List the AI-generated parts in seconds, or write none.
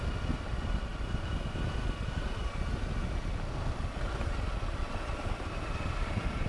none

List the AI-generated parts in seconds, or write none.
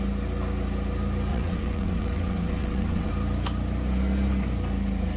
1.3-3.1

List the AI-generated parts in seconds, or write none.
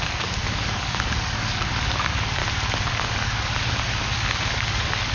0.0-2.4; 2.9-5.1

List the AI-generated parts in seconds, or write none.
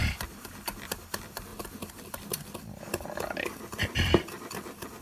none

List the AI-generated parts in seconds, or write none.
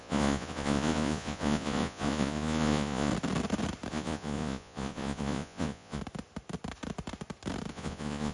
0.0-3.1; 3.9-6.0; 7.7-8.3